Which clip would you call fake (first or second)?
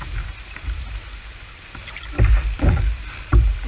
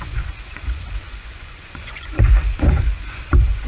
second